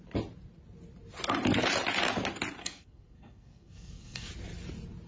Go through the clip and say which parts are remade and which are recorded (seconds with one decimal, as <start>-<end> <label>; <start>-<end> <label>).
0.0-2.6 recorded; 2.6-4.3 remade; 4.3-5.1 recorded